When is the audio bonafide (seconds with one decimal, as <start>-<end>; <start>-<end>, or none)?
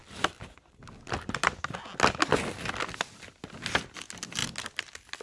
0.0-5.2